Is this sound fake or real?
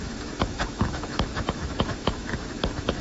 fake